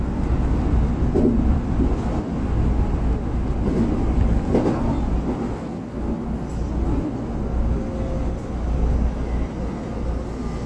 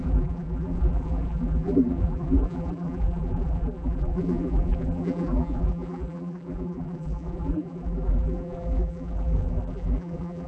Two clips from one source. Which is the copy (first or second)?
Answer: second